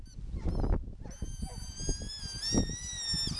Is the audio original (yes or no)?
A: yes